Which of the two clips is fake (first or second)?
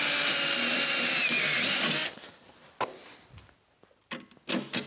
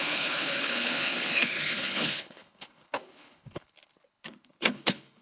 second